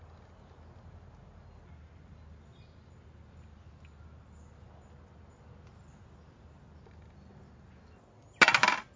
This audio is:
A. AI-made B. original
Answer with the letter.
B